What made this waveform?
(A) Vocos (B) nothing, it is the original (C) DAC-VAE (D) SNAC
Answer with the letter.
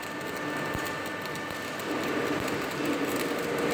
B